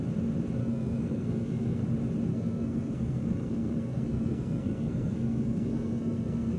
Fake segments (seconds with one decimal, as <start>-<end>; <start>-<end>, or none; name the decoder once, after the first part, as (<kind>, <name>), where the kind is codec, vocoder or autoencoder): 0.6-1.8 (codec, SNAC); 2.3-6.6